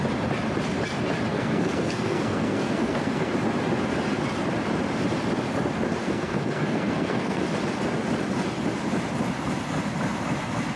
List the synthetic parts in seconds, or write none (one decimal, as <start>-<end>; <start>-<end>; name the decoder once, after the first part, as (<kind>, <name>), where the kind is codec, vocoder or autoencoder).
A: 1.3-3.3 (codec, SNAC); 6.0-7.4